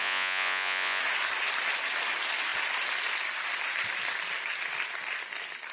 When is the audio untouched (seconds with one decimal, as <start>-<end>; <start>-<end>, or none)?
1.0-5.7